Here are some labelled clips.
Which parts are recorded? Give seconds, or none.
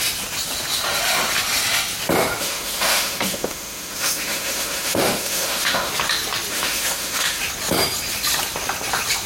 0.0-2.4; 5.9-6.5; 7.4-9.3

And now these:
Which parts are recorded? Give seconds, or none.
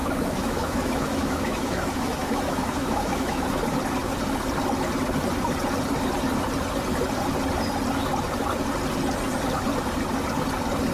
3.6-10.9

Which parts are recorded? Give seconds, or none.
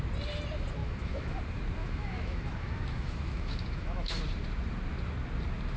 0.0-0.8; 1.4-1.8; 4.2-5.8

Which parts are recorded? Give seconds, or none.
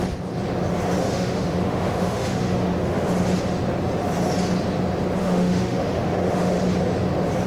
0.0-1.0; 3.0-5.2; 6.6-7.5